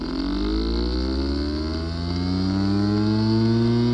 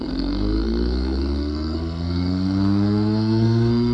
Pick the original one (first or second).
first